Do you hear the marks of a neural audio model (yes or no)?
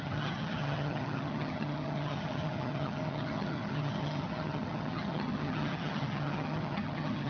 yes